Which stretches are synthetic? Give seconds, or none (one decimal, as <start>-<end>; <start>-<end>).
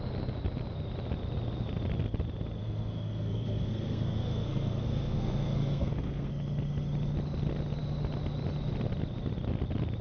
2.6-6.3